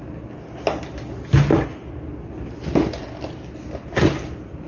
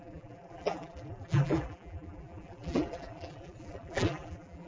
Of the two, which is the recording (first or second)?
first